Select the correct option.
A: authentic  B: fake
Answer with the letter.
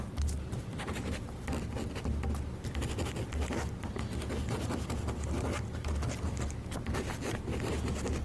A